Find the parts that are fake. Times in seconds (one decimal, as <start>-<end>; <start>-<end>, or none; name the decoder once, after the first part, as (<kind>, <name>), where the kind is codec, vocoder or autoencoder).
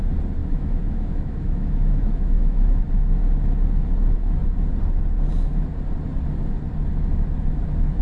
0.4-2.9 (autoencoder, DAC-VAE)